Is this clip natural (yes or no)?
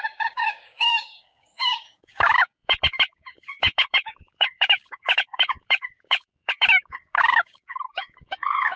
no